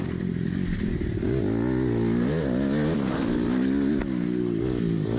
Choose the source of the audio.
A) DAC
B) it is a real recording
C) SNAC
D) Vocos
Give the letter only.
B